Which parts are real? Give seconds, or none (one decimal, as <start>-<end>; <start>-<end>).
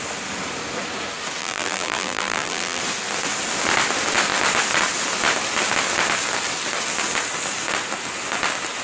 0.0-1.4; 2.8-8.8